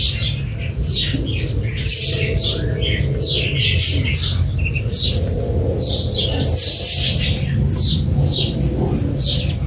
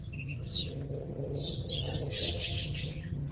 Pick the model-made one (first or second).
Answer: second